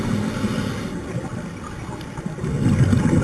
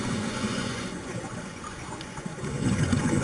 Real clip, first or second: first